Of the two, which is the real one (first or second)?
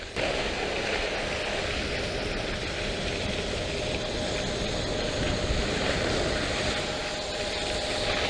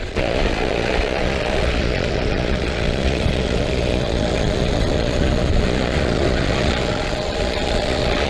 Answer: first